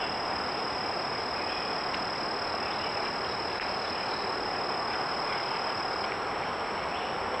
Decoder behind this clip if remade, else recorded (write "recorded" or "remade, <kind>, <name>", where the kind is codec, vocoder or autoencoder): recorded